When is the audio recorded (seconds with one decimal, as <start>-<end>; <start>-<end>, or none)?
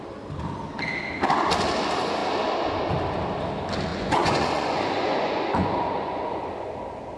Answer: 0.0-3.9; 6.7-7.2